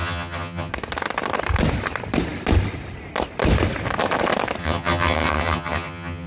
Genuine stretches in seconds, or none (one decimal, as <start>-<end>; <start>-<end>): 0.7-4.6